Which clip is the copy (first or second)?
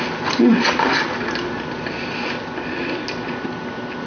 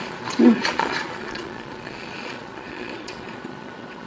second